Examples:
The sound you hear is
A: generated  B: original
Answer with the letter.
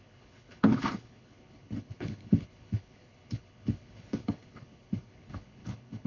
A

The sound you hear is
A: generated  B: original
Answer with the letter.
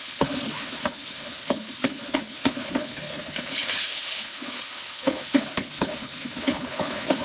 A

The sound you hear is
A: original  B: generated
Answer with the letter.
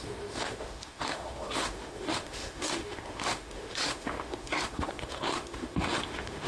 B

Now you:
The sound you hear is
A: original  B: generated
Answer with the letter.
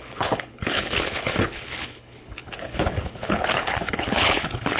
B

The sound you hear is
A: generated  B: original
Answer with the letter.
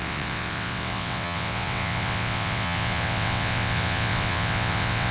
A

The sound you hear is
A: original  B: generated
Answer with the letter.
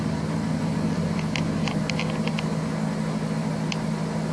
A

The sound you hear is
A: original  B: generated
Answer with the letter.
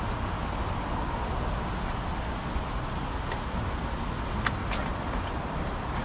A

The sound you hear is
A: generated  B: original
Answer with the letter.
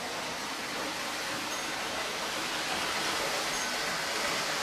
B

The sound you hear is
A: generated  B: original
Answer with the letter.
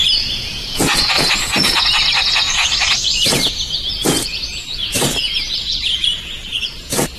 A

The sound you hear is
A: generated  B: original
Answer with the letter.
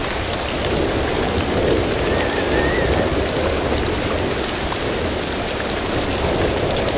B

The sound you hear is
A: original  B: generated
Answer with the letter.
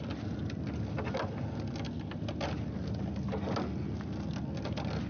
A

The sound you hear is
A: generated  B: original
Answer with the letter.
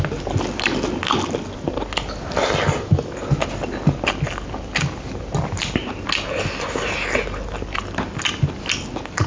B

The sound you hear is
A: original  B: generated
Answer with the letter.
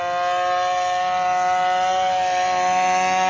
A